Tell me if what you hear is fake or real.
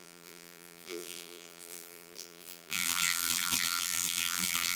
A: fake